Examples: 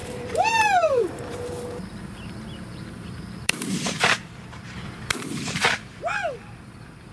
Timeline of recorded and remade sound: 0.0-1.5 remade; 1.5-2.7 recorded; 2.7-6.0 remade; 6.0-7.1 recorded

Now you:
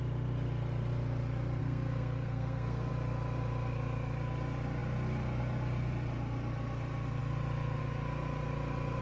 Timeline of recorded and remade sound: 0.0-1.6 recorded; 1.6-2.9 remade; 2.9-9.0 recorded